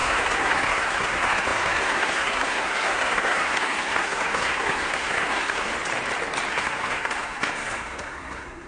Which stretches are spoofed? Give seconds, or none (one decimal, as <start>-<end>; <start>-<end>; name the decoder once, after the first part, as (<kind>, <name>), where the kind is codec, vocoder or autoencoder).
0.0-5.7 (codec, SNAC); 6.5-8.7